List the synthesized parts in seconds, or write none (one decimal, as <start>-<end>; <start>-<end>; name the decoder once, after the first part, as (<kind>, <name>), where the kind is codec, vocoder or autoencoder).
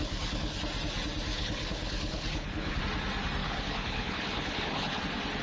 0.0-0.6 (codec, HILCodec); 1.3-2.8; 3.4-5.0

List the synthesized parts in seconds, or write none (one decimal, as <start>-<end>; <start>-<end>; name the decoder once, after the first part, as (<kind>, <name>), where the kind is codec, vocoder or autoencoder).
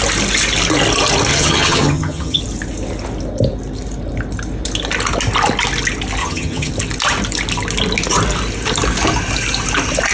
1.3-2.4 (vocoder, HiFi-GAN); 6.2-6.7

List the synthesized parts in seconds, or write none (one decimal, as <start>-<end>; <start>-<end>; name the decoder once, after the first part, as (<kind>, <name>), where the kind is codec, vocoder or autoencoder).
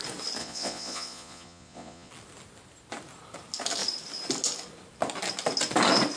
0.4-2.1 (vocoder, Vocos)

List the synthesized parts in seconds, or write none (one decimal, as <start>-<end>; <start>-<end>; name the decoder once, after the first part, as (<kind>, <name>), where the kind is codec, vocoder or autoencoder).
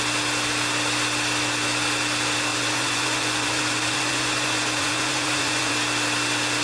2.5-5.7 (vocoder, Vocos)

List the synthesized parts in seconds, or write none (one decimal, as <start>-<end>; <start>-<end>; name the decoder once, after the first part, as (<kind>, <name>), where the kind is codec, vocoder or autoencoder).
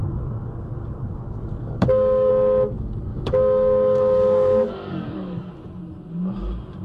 0.0-2.3 (codec, DAC); 3.1-5.5